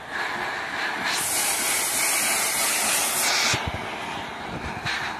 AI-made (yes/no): no